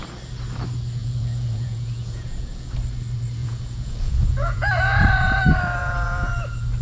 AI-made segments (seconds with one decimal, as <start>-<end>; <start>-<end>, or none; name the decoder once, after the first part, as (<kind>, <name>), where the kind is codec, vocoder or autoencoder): 1.0-2.7 (vocoder, Vocos); 3.4-4.7; 5.8-6.3